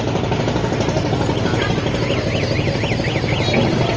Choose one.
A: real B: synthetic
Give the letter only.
A